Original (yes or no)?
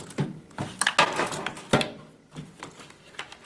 yes